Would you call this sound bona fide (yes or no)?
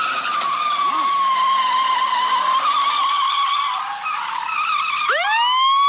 yes